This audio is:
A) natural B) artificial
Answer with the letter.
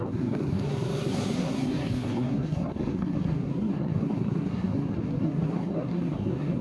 B